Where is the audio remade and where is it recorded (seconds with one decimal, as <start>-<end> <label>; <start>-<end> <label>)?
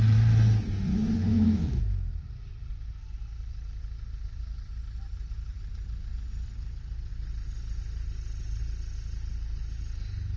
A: 0.0-1.3 recorded; 1.3-1.8 remade; 1.8-10.4 recorded